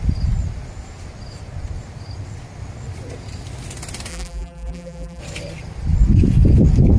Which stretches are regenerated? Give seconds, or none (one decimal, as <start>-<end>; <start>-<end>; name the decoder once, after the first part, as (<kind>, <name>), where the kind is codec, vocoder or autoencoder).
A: 4.1-5.2 (vocoder, BigVGAN v2)